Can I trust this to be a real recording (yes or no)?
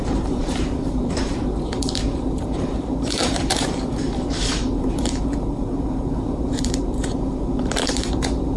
no